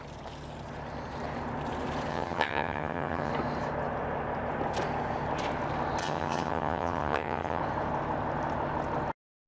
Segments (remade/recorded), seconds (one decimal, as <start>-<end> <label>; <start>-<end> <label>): 0.0-2.1 recorded; 2.1-3.3 remade; 3.3-6.0 recorded; 6.0-7.6 remade; 7.6-9.5 recorded